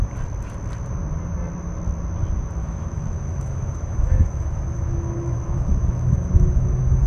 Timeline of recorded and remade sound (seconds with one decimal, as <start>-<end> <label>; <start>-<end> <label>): 0.0-2.6 recorded; 2.6-7.1 remade